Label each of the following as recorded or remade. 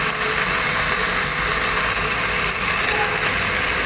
recorded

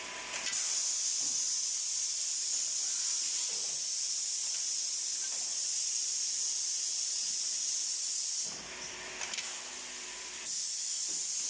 recorded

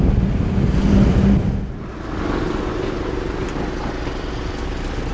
recorded